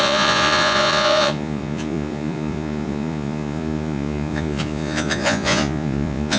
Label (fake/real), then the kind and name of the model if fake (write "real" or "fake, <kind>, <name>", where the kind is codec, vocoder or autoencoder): fake, vocoder, Vocos